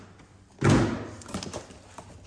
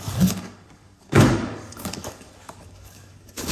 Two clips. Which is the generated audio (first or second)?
second